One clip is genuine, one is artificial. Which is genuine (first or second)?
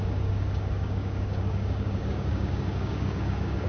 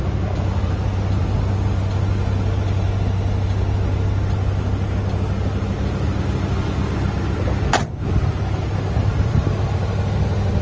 second